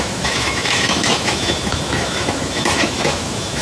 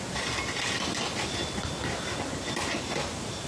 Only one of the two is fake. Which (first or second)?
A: first